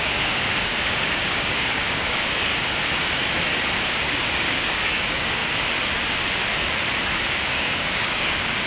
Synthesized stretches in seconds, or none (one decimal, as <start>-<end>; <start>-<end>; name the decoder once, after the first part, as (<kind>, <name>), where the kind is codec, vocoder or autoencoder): 0.0-2.5 (codec, DAC); 4.2-5.4; 7.4-8.7